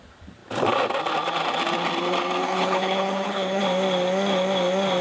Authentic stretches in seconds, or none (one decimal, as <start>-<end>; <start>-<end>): 0.0-2.4; 3.6-5.0